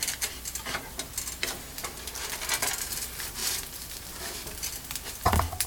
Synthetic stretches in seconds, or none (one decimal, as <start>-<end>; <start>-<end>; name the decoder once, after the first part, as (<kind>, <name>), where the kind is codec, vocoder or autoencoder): 0.0-1.8 (vocoder, BigVGAN v2); 2.6-5.7